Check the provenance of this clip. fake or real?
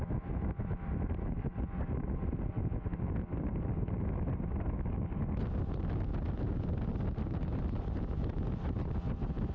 real